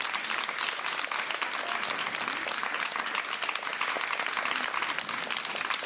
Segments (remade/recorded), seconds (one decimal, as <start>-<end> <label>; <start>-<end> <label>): 0.0-5.9 recorded